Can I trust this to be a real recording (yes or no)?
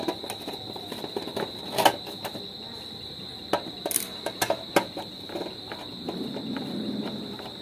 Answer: yes